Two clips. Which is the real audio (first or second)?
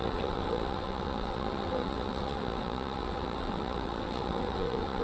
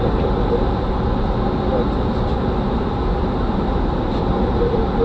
second